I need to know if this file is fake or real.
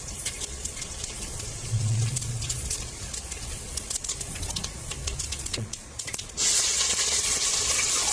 fake